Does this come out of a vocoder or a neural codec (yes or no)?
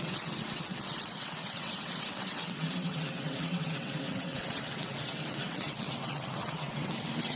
yes